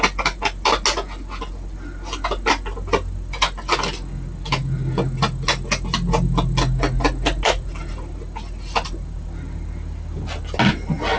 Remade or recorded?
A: recorded